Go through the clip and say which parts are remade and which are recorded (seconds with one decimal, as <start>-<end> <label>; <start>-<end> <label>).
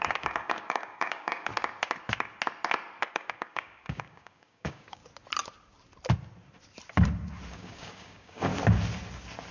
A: 0.0-1.5 remade; 1.5-3.1 recorded; 3.1-5.0 remade; 5.0-7.5 recorded; 7.5-8.5 remade; 8.5-9.5 recorded